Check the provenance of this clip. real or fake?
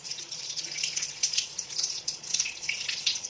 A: fake